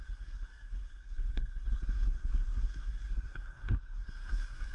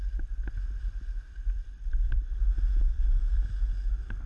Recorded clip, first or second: second